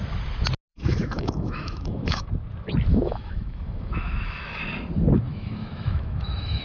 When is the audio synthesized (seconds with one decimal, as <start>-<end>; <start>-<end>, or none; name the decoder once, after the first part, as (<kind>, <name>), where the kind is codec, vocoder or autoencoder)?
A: 0.7-2.3 (autoencoder, DAC-VAE); 2.9-4.6; 5.3-6.6